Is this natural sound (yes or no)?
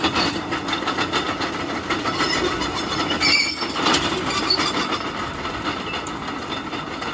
yes